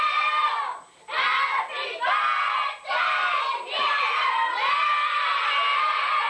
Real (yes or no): no